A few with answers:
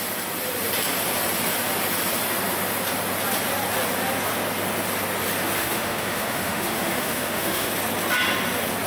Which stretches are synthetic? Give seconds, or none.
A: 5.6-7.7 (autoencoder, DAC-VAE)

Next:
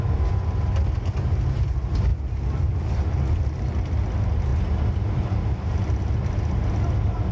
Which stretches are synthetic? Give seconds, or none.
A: none

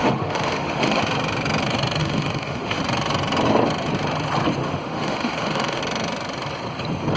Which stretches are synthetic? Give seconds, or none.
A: 0.0-1.0 (autoencoder, DAC-VAE); 2.0-2.8; 4.6-5.8